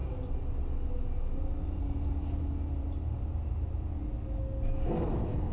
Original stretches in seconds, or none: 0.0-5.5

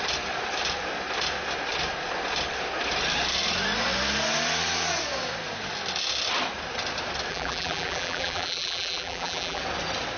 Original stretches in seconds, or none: 0.0-7.3; 9.6-10.2

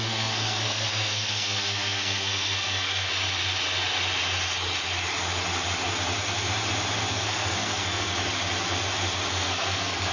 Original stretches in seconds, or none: 3.1-7.1; 8.1-9.3